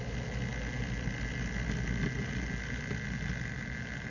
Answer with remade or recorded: recorded